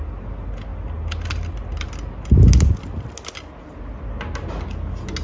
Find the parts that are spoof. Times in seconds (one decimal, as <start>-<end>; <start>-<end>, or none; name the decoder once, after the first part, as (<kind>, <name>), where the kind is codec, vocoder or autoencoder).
none